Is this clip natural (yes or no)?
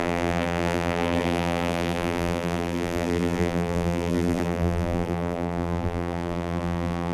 no